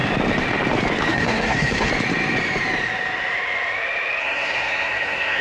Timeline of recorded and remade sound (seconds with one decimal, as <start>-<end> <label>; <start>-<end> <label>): 0.0-1.1 recorded; 1.1-1.9 remade; 1.9-4.2 recorded; 4.2-5.4 remade